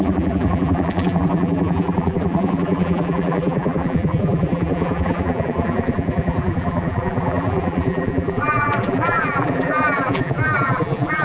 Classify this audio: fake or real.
fake